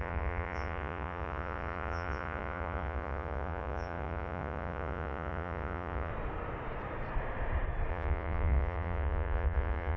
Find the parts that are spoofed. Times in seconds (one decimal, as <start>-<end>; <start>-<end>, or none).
0.0-6.1; 7.9-10.0

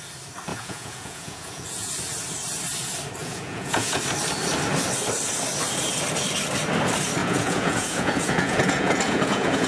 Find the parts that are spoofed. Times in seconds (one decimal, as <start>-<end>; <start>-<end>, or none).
0.5-1.9; 3.2-4.0; 7.2-9.7

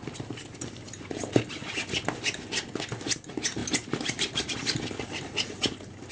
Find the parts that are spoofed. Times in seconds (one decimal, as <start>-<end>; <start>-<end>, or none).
none

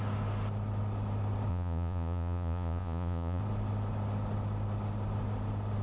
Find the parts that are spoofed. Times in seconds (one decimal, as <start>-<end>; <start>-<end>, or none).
1.5-3.4

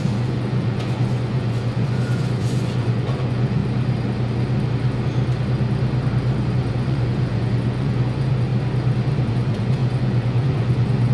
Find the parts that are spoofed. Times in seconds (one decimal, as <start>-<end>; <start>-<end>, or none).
0.0-3.6; 6.5-8.5; 9.3-11.1

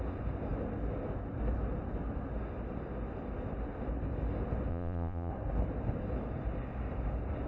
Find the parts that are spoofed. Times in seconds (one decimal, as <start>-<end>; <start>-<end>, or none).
4.7-5.3